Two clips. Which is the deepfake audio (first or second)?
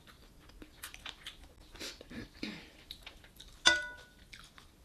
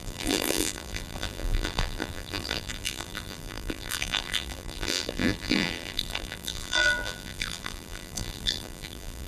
second